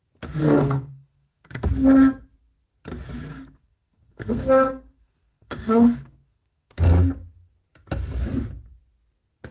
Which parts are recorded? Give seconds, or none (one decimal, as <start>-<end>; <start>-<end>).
0.0-0.4; 1.7-3.3; 6.8-9.5